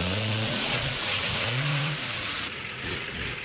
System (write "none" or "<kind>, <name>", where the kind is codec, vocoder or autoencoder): vocoder, Vocos